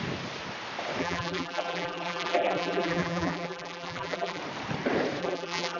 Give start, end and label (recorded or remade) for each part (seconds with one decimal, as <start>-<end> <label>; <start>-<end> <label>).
0.0-1.0 recorded; 1.0-4.4 remade; 4.4-5.2 recorded; 5.2-5.8 remade